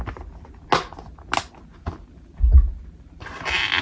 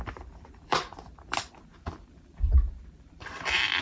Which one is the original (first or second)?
first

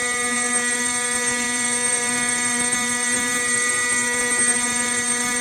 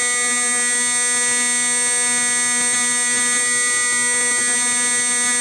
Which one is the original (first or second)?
second